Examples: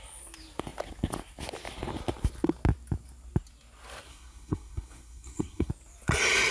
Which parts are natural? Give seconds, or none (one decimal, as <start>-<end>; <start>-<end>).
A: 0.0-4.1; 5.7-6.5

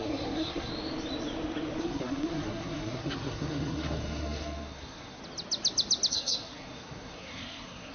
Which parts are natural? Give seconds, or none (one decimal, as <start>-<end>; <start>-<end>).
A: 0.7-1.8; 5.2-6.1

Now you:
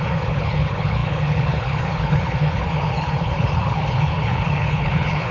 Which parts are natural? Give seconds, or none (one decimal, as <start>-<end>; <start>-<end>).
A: none